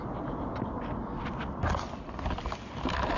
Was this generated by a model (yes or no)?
no